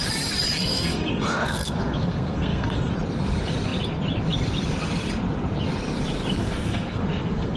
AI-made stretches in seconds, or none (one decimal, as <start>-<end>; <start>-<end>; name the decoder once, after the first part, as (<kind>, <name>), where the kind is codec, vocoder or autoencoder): 0.6-2.9 (codec, SNAC); 6.4-7.6